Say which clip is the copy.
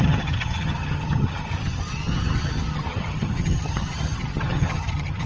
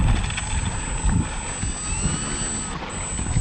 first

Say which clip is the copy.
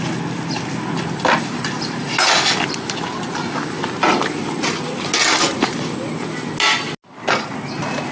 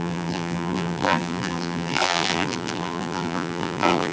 second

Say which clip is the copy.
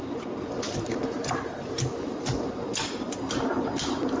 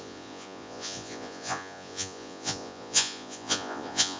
second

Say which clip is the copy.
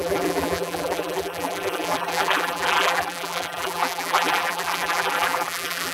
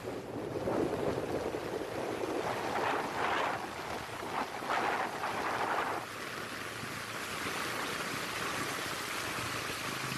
first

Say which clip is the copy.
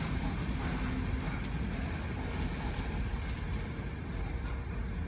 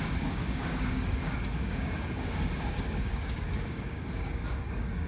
second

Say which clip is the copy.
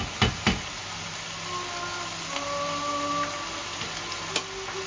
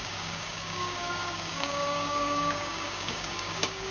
second